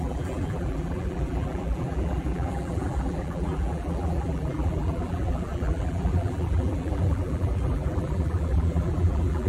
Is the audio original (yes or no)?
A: no